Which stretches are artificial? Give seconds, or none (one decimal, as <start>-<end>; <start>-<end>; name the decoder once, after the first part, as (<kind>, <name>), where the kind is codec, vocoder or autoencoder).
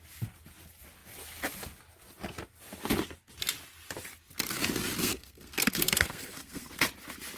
5.0-6.7 (codec, SNAC)